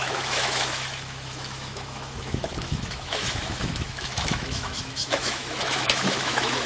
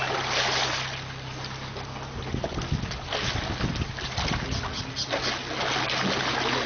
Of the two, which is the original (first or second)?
second